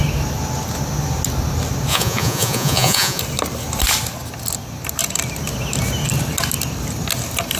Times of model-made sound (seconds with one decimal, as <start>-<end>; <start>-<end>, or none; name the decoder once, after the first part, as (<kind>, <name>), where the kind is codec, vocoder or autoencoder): 1.9-3.2 (vocoder, Vocos)